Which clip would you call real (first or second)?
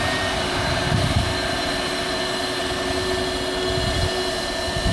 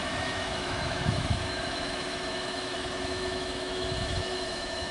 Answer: first